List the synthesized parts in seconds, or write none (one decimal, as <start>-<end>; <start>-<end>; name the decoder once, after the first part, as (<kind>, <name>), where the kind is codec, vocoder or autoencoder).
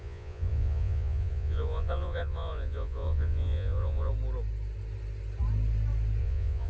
0.0-4.1 (vocoder, Vocos); 6.2-6.7